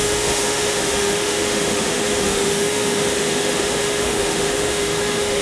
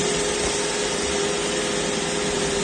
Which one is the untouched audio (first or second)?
second